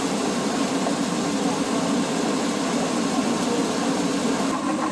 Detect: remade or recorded recorded